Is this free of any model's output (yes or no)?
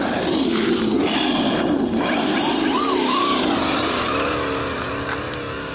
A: yes